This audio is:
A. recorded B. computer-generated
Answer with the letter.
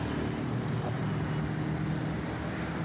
A